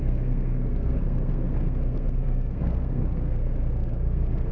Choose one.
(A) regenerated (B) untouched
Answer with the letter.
A